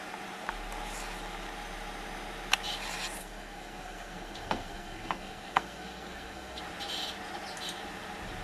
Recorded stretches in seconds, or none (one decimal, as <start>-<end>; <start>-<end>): 0.0-3.2; 6.6-8.4